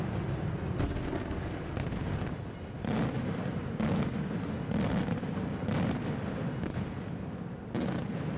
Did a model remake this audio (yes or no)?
no